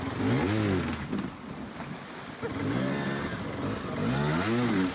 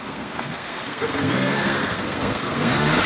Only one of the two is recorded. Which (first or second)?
first